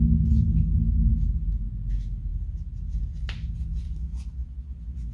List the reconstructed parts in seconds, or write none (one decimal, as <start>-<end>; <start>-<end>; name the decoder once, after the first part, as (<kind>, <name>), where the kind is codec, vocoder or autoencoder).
none